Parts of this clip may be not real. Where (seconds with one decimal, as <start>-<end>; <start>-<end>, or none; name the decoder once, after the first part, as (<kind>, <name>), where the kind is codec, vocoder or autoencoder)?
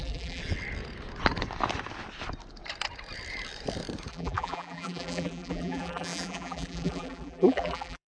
0.0-0.4 (vocoder, BigVGAN v2); 4.1-8.1